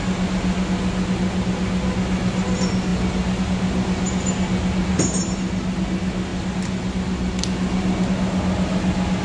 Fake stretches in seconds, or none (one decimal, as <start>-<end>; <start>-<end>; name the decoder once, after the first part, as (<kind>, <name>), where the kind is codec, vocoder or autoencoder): none